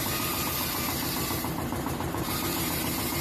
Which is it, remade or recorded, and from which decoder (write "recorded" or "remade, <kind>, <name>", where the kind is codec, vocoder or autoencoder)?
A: remade, vocoder, BigVGAN v2